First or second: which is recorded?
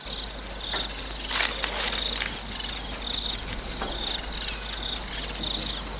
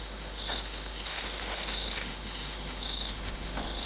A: first